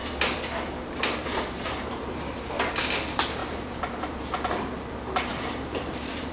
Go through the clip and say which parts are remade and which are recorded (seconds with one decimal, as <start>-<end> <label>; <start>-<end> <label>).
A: 0.0-2.4 remade; 2.4-3.4 recorded; 3.4-4.2 remade; 4.2-5.3 recorded; 5.3-6.3 remade